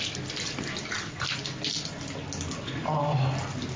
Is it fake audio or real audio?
real